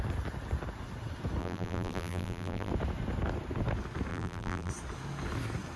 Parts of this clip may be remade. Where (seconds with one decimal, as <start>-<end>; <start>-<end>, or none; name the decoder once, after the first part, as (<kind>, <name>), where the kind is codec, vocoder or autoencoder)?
1.4-2.7 (vocoder, BigVGAN v2); 4.1-4.7